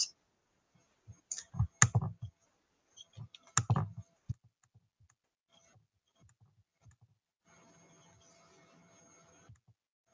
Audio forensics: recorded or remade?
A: recorded